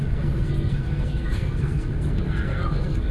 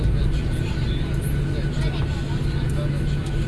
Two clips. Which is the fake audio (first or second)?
first